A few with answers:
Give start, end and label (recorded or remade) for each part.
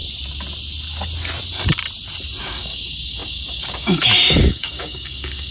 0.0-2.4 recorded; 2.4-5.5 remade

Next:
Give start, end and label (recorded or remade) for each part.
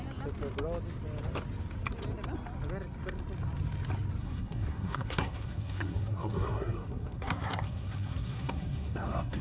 0.0-4.2 recorded; 4.2-9.4 remade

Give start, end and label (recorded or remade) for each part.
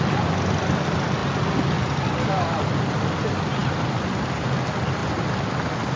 0.0-6.0 recorded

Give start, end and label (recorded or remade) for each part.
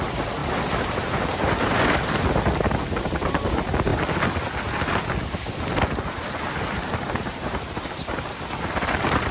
0.0-0.4 recorded; 0.4-2.4 remade; 2.4-6.2 recorded; 6.2-8.4 remade; 8.4-9.3 recorded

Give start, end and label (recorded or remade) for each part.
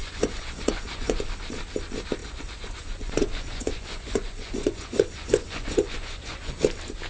0.0-1.3 remade; 1.3-2.2 recorded; 2.2-6.5 remade; 6.5-7.1 recorded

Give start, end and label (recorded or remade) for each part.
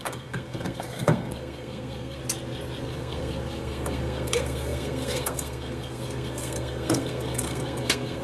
0.0-2.2 remade; 2.2-2.8 recorded; 2.8-8.2 remade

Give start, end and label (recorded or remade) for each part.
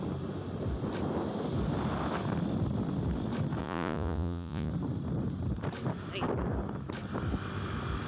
0.0-3.6 recorded; 3.6-4.7 remade; 4.7-8.1 recorded